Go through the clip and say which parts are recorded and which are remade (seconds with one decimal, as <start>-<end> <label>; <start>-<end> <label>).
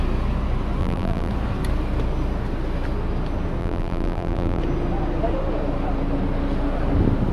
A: 0.0-0.8 recorded; 0.8-1.3 remade; 1.3-3.6 recorded; 3.6-4.6 remade; 4.6-7.3 recorded